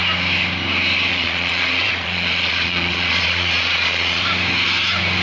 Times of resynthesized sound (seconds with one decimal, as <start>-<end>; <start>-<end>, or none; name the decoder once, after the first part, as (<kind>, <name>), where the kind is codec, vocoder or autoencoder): 1.1-4.2 (vocoder, Vocos)